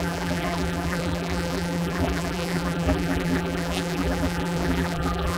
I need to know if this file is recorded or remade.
remade